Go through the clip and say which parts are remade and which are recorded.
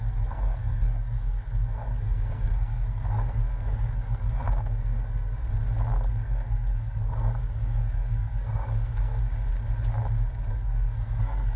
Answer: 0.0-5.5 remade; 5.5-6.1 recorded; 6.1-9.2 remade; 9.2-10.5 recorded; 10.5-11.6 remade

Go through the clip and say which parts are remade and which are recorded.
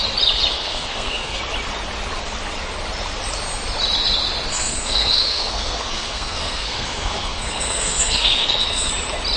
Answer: 0.0-0.5 recorded; 0.5-1.4 remade; 1.4-4.5 recorded; 4.5-8.9 remade; 8.9-9.4 recorded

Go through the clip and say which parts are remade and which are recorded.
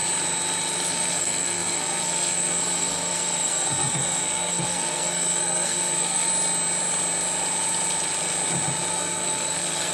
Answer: 0.0-0.9 recorded; 0.9-6.3 remade; 6.3-8.9 recorded; 8.9-9.9 remade